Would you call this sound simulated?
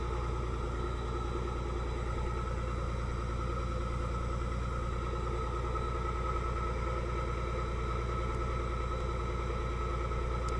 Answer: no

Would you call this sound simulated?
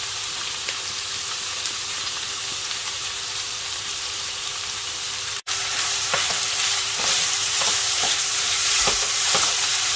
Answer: yes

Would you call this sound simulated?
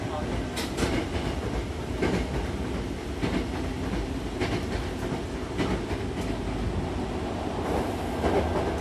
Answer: no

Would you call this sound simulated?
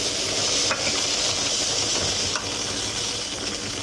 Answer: no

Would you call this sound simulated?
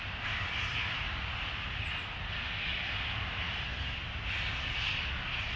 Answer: no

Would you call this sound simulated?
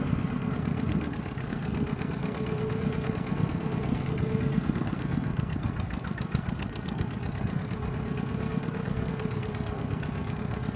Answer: yes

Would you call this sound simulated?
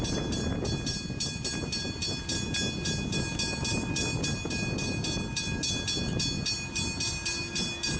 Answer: no